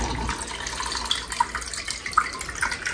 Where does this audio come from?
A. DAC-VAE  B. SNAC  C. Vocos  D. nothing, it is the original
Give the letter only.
D